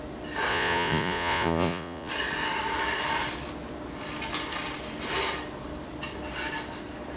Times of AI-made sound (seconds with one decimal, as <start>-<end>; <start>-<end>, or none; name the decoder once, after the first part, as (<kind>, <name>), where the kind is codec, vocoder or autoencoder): 0.5-2.1 (vocoder, Vocos)